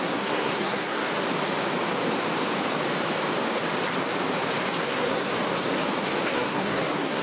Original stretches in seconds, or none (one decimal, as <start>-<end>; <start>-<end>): 1.0-4.8; 5.3-6.3